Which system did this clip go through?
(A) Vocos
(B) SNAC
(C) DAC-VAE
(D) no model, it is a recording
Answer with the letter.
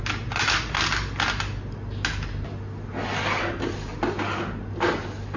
D